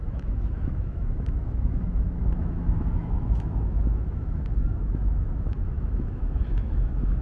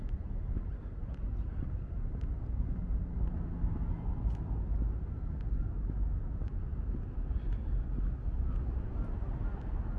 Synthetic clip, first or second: first